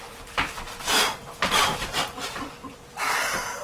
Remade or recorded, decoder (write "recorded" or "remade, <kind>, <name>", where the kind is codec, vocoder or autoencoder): remade, vocoder, BigVGAN v2